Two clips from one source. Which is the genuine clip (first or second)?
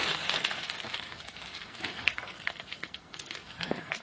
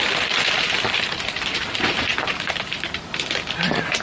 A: second